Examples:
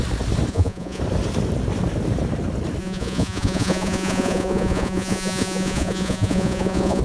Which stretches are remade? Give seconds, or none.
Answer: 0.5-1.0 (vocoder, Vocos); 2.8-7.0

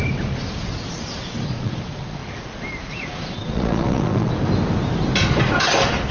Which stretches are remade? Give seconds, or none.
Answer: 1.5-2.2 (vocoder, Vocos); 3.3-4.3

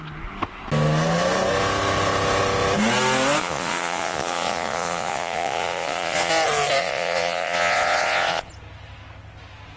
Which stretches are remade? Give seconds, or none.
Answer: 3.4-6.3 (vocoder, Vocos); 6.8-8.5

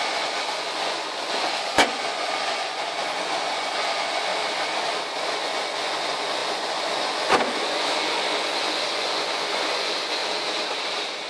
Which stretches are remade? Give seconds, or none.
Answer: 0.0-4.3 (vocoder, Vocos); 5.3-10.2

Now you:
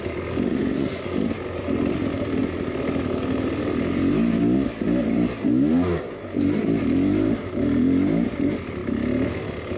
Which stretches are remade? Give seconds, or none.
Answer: 0.5-1.1 (vocoder, Vocos)